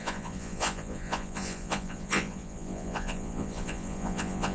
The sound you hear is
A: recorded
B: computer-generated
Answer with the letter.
B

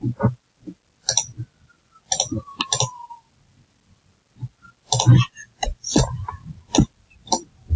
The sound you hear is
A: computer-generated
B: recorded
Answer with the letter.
B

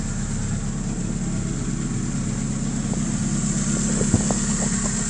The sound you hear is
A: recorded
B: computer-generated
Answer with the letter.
A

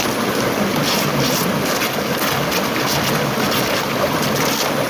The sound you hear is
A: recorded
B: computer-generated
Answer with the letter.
A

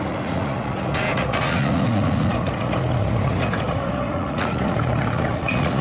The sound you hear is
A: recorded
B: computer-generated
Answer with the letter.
B